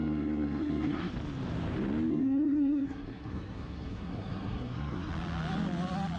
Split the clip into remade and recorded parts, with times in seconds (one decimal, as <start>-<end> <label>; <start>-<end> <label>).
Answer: 0.0-1.1 remade; 1.1-2.1 recorded; 2.1-5.1 remade; 5.1-6.2 recorded